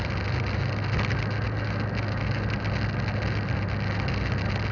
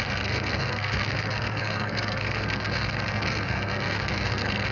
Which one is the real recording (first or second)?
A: first